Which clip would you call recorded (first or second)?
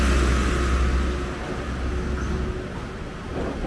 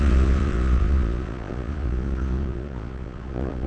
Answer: first